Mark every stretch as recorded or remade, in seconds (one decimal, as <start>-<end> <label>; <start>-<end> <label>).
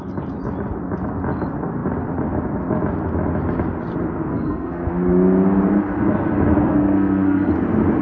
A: 0.0-4.3 recorded; 4.3-4.9 remade; 4.9-6.7 recorded; 6.7-7.5 remade; 7.5-8.0 recorded